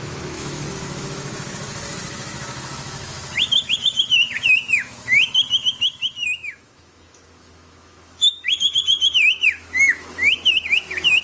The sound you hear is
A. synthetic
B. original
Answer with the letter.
A